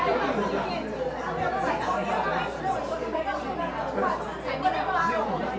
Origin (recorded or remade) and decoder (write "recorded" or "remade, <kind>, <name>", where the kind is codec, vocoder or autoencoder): recorded